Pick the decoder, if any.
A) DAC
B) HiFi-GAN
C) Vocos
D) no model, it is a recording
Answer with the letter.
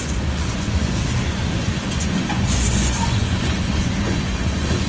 C